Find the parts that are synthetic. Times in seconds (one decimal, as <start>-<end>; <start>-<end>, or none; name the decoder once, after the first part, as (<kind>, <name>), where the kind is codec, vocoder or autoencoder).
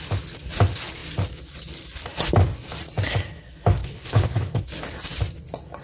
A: 3.8-4.7 (codec, HILCodec)